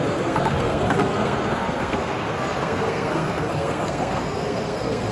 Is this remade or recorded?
remade